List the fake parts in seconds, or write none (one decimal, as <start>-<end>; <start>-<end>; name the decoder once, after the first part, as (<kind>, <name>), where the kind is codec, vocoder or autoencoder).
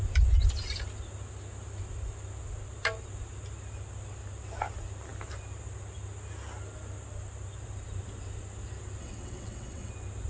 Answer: 9.0-9.9 (vocoder, WaveNeXt)